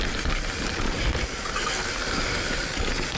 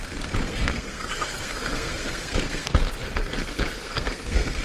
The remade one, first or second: second